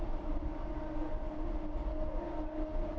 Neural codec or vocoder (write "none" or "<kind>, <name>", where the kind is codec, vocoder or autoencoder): none